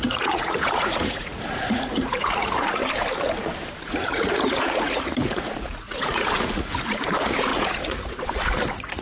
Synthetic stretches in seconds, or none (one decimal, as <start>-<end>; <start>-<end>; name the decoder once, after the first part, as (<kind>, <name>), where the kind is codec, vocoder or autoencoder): 0.0-2.8 (vocoder, Vocos); 3.7-9.0